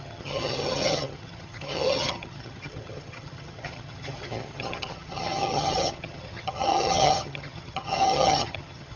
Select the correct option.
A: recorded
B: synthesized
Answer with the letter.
B